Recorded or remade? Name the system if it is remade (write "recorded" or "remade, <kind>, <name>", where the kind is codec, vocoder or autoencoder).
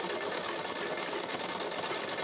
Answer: recorded